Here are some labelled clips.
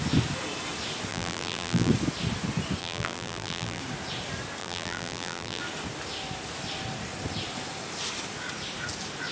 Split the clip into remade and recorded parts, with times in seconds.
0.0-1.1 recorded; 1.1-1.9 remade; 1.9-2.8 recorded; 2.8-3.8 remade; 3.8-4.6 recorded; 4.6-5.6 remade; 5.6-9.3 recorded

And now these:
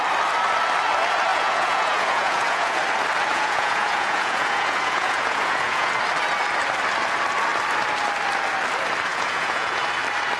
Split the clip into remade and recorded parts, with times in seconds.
0.0-1.3 recorded; 1.3-2.8 remade; 2.8-3.3 recorded; 3.3-5.9 remade; 5.9-9.1 recorded; 9.1-9.8 remade; 9.8-10.4 recorded